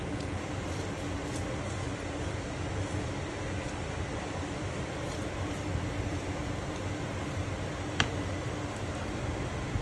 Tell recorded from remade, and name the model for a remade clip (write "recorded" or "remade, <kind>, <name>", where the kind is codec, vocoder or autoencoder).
recorded